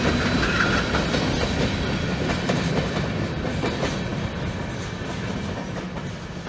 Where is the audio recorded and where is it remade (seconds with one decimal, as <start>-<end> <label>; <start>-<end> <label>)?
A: 0.0-6.5 recorded